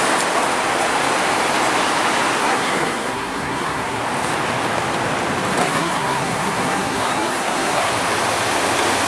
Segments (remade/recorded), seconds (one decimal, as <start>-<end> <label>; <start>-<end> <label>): 0.0-2.4 recorded; 2.4-4.0 remade; 4.0-5.6 recorded; 5.6-7.9 remade; 7.9-9.1 recorded

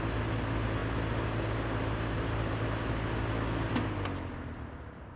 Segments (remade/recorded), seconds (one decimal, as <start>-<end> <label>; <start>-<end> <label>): 0.0-5.2 recorded

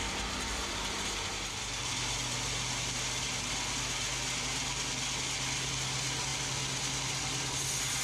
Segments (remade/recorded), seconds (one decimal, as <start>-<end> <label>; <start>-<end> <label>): 0.0-8.0 recorded

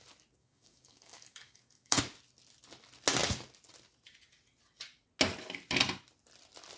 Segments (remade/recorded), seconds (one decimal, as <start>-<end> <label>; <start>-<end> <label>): 0.0-0.4 recorded; 0.4-2.0 remade; 2.0-6.8 recorded

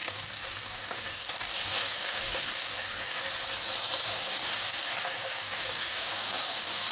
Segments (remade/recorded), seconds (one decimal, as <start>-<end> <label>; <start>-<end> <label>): 0.0-3.2 remade; 3.2-4.0 recorded; 4.0-6.9 remade